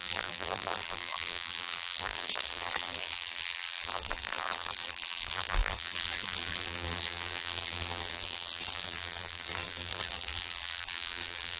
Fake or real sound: fake